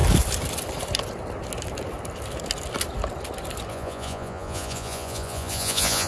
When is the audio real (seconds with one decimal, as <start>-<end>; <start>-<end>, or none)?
0.0-3.7